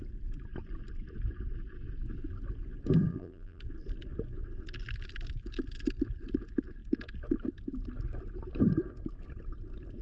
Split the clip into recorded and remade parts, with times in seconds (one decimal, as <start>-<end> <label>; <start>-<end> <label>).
0.0-3.1 recorded; 3.1-3.6 remade; 3.6-10.0 recorded

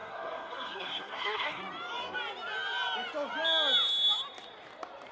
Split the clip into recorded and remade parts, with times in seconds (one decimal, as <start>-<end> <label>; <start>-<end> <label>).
0.0-1.6 remade; 1.6-5.1 recorded

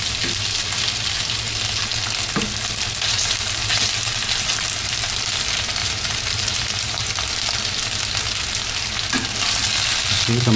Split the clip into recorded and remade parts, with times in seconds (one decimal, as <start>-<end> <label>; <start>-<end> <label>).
0.0-5.8 recorded; 5.8-7.1 remade; 7.1-10.6 recorded